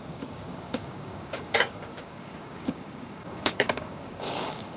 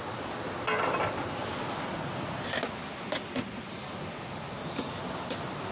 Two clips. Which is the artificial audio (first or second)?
first